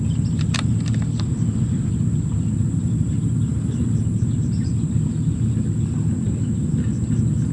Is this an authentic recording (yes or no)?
yes